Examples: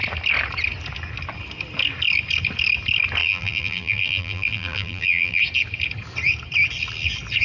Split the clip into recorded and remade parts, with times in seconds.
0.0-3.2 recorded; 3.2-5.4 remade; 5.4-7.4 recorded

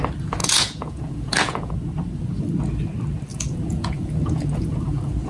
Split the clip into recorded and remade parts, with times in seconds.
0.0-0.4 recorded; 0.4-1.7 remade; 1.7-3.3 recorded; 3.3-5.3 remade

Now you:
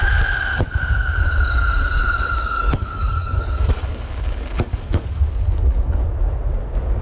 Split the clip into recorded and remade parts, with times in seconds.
0.0-2.6 recorded; 2.6-6.0 remade; 6.0-7.0 recorded